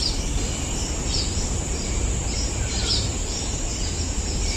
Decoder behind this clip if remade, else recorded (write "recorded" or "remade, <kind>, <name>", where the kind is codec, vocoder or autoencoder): remade, vocoder, BigVGAN v2